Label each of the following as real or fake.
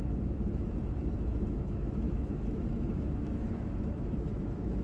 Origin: fake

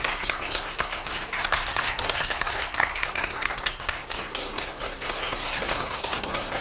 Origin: fake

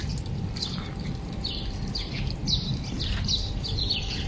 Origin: real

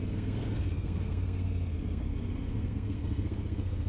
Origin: fake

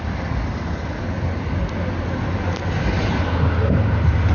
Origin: real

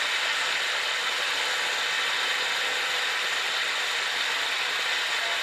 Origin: real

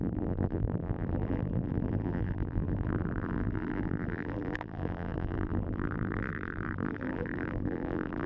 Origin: fake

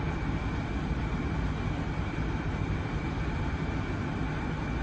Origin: real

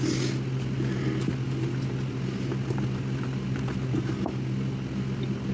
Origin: real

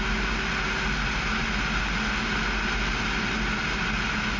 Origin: real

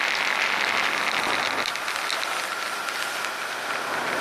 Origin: real